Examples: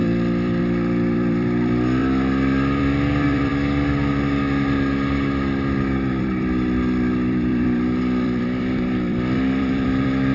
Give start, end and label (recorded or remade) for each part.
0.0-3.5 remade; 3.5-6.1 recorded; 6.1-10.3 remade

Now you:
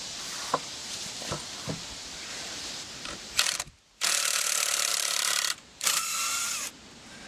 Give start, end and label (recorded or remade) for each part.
0.0-0.8 recorded; 0.8-1.4 remade; 1.4-2.3 recorded; 2.3-3.4 remade; 3.4-4.9 recorded; 4.9-6.5 remade; 6.5-7.3 recorded

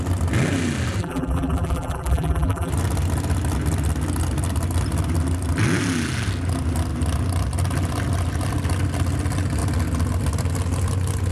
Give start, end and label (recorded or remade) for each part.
0.0-1.0 recorded; 1.0-2.7 remade; 2.7-11.3 recorded

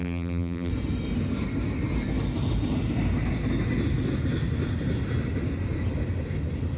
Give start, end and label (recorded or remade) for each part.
0.0-0.7 remade; 0.7-6.8 recorded

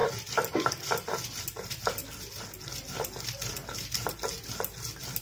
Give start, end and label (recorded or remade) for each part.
0.0-5.2 recorded

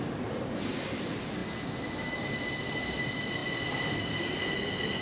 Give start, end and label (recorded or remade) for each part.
0.0-5.0 recorded